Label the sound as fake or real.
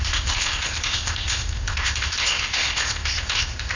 fake